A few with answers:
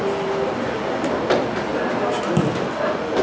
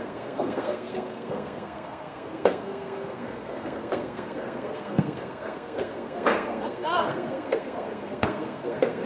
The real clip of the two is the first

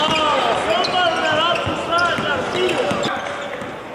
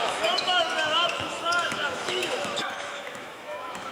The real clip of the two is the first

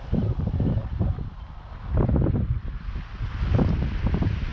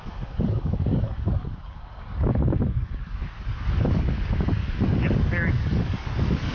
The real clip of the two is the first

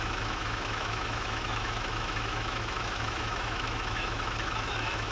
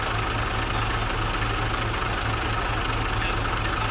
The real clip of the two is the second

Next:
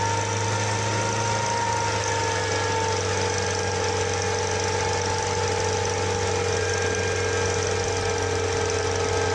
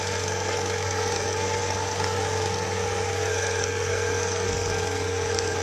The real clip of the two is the first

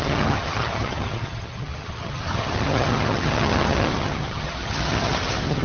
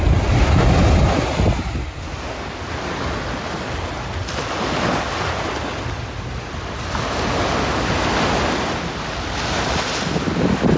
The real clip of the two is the second